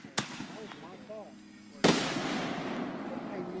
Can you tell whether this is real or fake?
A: real